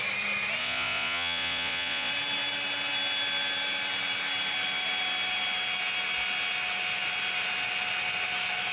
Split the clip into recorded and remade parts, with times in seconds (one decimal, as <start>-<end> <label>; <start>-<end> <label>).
0.0-0.6 recorded; 0.6-2.1 remade; 2.1-8.7 recorded